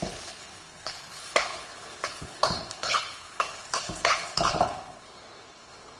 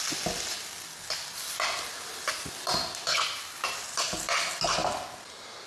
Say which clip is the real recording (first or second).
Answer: second